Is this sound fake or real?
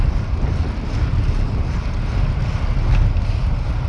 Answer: real